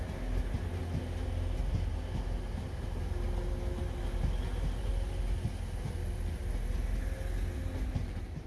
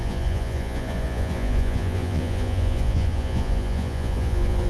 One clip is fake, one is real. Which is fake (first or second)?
second